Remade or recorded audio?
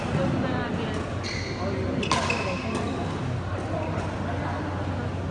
recorded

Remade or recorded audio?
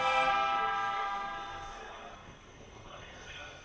remade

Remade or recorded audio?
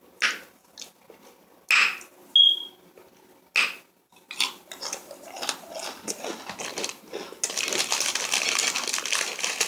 recorded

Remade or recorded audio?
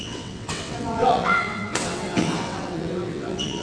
remade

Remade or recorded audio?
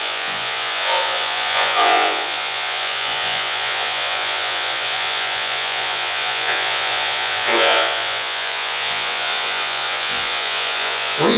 remade